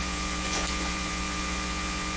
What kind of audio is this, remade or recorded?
remade